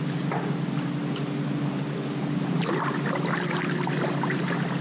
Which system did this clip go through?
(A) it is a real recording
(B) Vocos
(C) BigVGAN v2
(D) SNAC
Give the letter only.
A